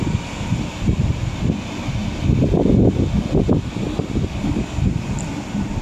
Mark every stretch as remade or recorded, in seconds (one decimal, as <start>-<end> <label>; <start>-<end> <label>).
0.0-5.8 recorded